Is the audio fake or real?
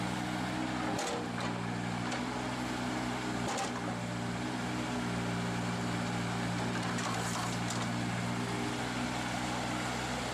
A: real